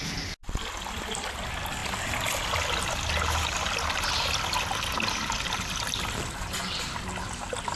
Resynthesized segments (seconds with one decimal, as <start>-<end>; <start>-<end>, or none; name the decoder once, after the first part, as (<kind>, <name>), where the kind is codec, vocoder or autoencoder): none